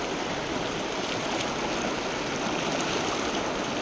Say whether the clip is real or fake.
real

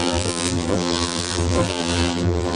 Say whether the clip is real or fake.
fake